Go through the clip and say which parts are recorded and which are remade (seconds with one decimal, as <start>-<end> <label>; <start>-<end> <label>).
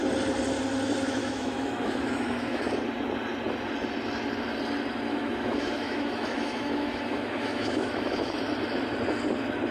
0.0-1.2 recorded; 1.2-2.7 remade; 2.7-5.1 recorded; 5.1-8.3 remade; 8.3-9.7 recorded